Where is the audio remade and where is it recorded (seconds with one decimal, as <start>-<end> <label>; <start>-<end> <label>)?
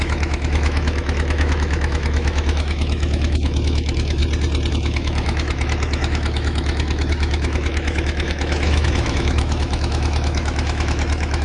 0.0-4.2 remade; 4.2-4.7 recorded; 4.7-11.4 remade